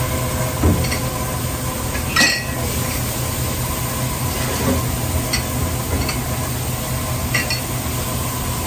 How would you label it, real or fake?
real